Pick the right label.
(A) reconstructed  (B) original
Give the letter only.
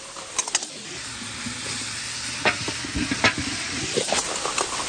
B